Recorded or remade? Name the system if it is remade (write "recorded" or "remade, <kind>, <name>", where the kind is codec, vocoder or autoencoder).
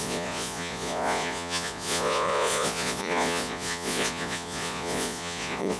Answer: remade, vocoder, Vocos